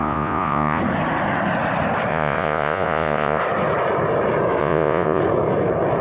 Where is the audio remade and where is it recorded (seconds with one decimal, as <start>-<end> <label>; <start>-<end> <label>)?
0.0-0.8 remade; 0.8-2.1 recorded; 2.1-3.4 remade; 3.4-4.6 recorded; 4.6-5.2 remade; 5.2-6.0 recorded